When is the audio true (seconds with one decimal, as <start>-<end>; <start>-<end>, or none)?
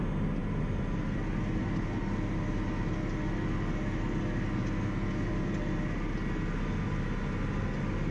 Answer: 0.0-8.1